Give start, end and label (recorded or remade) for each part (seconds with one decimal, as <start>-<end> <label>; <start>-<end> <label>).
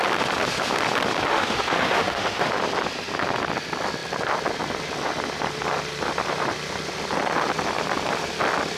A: 0.0-1.3 recorded; 1.3-2.5 remade; 2.5-8.8 recorded